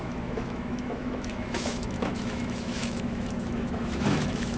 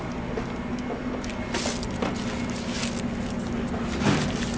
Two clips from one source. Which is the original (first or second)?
second